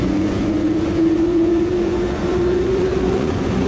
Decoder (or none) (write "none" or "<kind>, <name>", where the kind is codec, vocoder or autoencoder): vocoder, Vocos